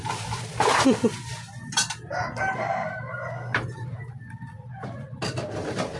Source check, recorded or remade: recorded